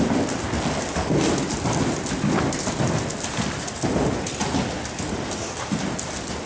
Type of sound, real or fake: real